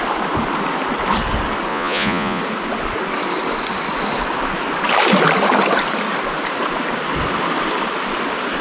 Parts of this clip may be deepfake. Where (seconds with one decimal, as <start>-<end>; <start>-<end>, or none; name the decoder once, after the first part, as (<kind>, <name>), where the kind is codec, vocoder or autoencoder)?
1.7-2.4 (vocoder, Vocos)